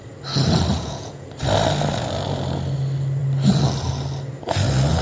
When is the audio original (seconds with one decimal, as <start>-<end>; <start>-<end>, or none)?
0.0-0.7; 1.3-5.0